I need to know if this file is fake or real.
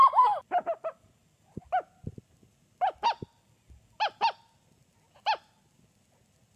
real